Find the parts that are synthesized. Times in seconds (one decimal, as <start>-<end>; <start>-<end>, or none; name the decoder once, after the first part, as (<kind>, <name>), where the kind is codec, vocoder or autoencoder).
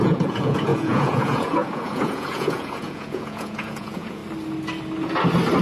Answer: 0.0-4.2 (vocoder, Vocos)